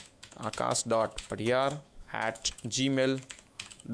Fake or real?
fake